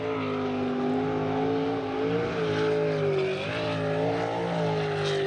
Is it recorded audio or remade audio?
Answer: recorded